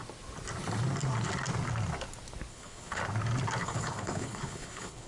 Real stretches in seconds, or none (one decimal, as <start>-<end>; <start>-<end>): 0.0-2.5; 3.0-3.6